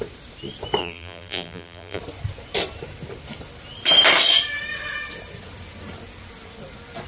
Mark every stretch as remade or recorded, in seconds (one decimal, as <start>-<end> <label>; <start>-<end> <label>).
0.0-0.8 recorded; 0.8-2.0 remade; 2.0-7.1 recorded